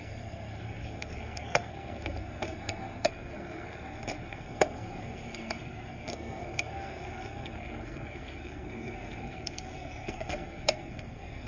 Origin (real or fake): fake